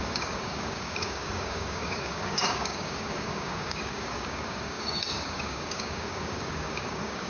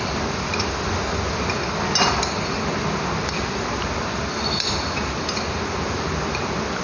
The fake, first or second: first